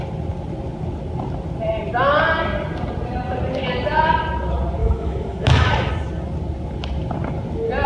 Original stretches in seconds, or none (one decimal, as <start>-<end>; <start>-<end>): 0.0-4.8; 5.9-7.9